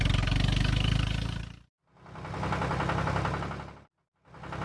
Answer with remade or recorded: recorded